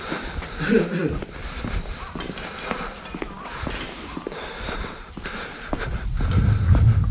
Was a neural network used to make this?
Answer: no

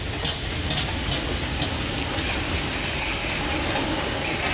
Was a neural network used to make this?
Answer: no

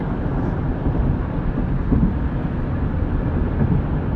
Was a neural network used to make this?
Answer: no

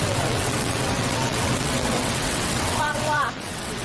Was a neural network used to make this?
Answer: yes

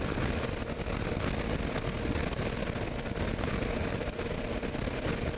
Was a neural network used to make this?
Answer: no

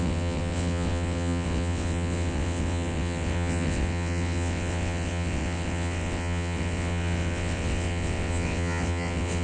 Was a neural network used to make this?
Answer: yes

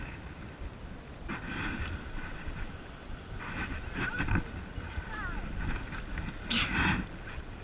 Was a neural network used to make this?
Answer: no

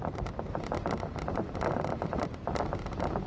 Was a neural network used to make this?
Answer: no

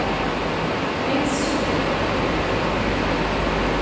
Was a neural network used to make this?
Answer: no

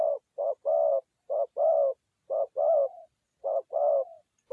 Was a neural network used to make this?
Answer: no